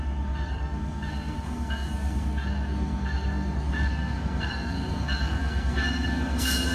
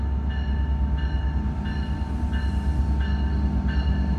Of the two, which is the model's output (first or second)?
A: first